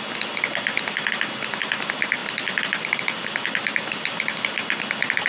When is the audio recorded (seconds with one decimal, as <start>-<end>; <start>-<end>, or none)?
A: 0.0-5.3